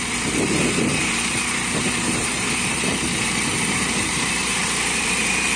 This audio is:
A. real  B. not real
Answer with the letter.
B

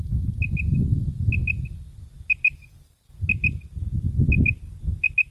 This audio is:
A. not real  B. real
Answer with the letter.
B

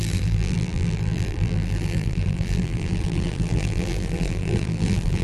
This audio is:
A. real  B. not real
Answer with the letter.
B